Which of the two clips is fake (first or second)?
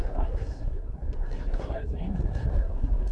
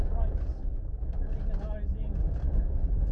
first